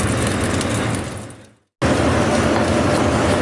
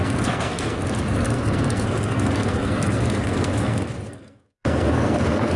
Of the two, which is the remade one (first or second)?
second